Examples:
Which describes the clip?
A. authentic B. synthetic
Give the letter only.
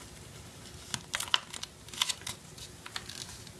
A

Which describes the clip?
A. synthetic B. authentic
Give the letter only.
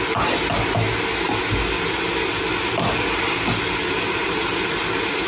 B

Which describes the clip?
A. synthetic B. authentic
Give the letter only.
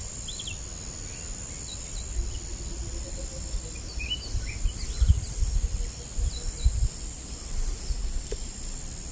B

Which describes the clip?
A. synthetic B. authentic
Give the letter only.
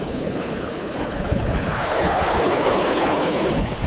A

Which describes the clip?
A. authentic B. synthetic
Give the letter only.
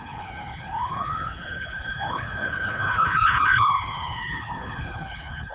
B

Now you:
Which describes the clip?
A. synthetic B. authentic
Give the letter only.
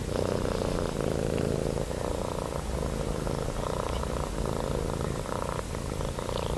B